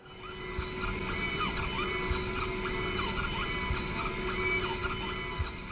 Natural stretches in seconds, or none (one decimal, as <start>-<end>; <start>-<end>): 0.0-5.7